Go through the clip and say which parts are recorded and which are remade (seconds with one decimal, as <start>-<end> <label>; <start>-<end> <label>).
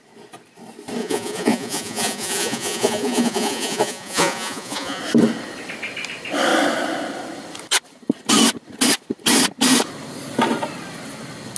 0.0-1.0 recorded; 1.0-5.0 remade; 5.0-11.6 recorded